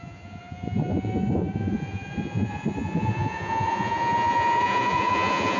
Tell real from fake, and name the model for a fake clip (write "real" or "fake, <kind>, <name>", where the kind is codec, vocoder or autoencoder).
fake, vocoder, Vocos